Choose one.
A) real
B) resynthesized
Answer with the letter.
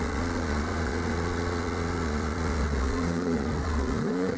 B